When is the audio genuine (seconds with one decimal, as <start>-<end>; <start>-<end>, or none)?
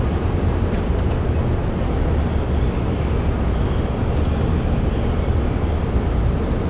0.0-6.7